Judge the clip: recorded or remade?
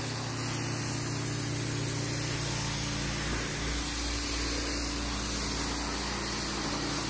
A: recorded